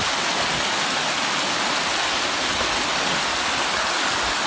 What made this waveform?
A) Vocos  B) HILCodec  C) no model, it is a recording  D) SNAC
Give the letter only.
C